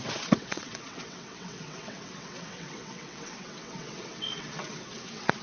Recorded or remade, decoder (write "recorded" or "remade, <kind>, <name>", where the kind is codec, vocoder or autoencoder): remade, vocoder, WaveNeXt